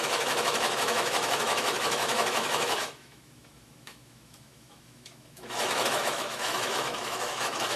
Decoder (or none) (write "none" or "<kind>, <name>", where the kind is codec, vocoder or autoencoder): autoencoder, DAC-VAE